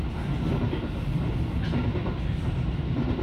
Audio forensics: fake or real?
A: real